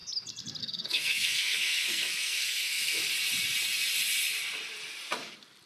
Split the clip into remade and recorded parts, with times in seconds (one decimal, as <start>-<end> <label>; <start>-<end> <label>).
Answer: 0.0-0.6 recorded; 0.6-3.0 remade; 3.0-5.7 recorded